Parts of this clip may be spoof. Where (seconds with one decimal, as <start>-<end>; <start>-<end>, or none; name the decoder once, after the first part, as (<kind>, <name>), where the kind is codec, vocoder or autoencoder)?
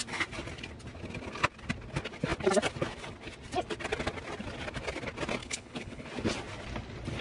5.4-6.1 (codec, HILCodec)